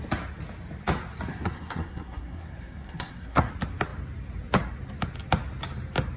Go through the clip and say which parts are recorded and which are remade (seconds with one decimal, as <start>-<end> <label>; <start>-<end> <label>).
0.0-1.3 recorded; 1.3-3.5 remade; 3.5-6.2 recorded